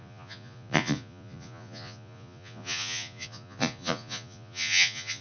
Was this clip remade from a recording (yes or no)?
yes